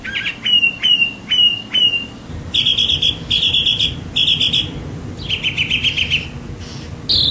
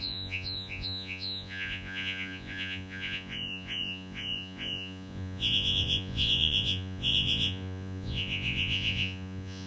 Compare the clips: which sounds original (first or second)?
first